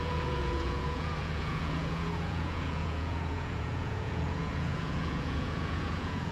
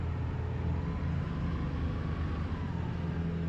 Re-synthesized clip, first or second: first